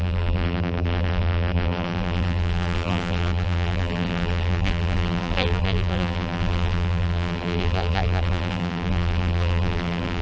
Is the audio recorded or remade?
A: remade